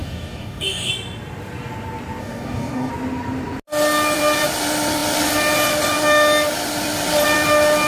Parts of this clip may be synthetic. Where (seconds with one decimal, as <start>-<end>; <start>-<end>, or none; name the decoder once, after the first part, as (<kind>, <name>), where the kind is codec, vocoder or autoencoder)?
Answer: 0.0-0.9 (codec, DAC); 2.2-2.9

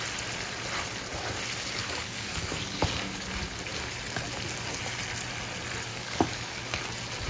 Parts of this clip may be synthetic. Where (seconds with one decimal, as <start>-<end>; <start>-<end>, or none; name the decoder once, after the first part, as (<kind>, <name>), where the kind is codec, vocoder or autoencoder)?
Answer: 1.8-3.3 (codec, DAC); 5.9-6.8

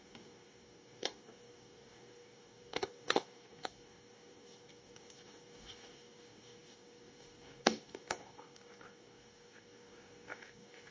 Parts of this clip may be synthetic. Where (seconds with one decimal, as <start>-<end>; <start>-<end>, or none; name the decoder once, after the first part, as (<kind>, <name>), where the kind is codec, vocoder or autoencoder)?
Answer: 0.0-10.9 (codec, DAC)